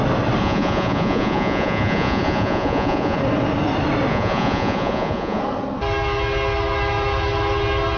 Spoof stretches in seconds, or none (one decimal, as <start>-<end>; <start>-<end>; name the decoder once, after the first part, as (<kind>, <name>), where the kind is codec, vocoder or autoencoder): 0.4-3.2 (vocoder, Vocos); 4.1-5.4